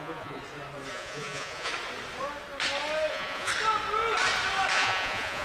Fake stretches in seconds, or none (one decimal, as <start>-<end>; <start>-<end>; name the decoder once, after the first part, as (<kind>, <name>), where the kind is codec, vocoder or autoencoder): 0.0-0.4 (vocoder, Vocos); 0.9-1.7; 3.1-3.5; 4.7-5.4